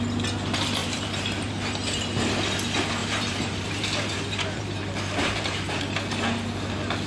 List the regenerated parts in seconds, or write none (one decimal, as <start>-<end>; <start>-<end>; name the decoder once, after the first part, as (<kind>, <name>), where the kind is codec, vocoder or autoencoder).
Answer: 0.8-1.5 (vocoder, BigVGAN v2); 3.0-5.8